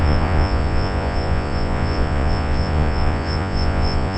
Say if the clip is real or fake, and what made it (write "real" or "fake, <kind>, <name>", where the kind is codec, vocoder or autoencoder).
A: fake, vocoder, Vocos